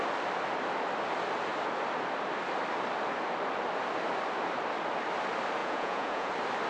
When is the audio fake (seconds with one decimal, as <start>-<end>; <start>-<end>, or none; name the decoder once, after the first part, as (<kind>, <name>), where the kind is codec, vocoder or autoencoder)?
5.6-6.3 (vocoder, Vocos)